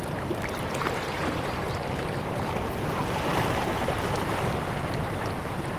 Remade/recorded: remade